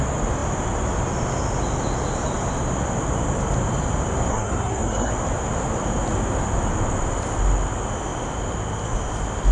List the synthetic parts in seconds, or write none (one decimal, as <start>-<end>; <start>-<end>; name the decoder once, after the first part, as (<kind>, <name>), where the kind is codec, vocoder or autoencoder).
4.3-5.1 (codec, SNAC)